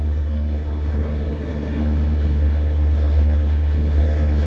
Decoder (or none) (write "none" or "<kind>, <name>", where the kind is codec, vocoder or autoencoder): codec, SNAC